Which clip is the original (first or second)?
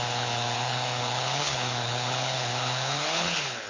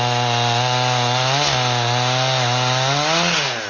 second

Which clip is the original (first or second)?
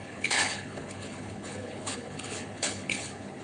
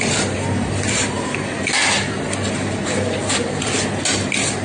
second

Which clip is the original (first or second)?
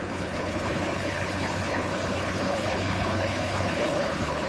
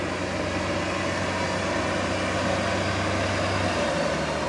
second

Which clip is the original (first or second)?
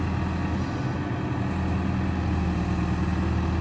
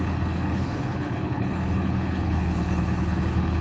first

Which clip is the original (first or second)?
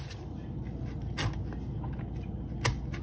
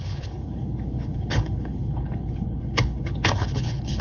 first